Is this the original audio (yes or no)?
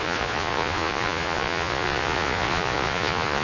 no